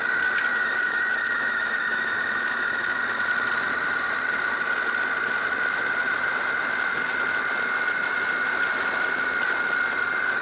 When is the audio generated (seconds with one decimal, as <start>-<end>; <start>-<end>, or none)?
0.5-3.0